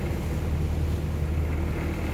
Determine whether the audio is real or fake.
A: real